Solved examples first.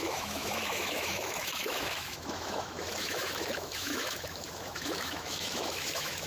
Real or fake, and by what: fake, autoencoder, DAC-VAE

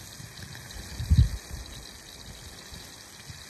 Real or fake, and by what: real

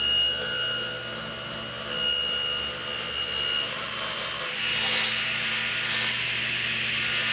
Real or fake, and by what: real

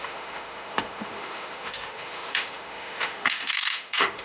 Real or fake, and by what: fake, autoencoder, DAC-VAE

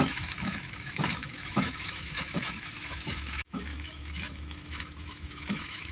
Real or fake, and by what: fake, autoencoder, DAC-VAE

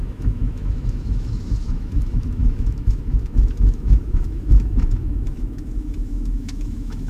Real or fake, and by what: fake, autoencoder, DAC-VAE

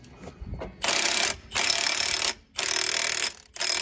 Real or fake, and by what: real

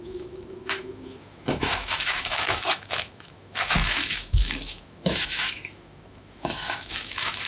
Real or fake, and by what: fake, autoencoder, DAC-VAE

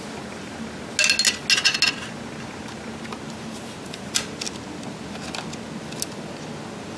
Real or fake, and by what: real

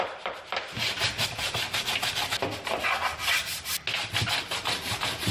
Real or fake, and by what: real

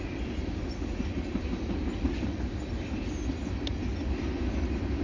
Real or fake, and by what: real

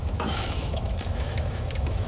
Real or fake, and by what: fake, autoencoder, DAC-VAE